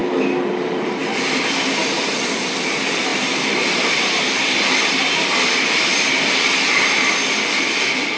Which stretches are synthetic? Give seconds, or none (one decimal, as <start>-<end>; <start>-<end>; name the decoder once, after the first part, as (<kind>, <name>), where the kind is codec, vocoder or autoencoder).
0.5-1.0 (vocoder, BigVGAN v2); 2.4-8.2